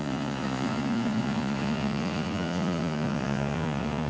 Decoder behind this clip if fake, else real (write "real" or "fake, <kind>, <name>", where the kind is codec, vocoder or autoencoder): fake, vocoder, Vocos